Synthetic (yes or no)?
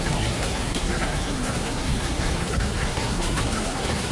yes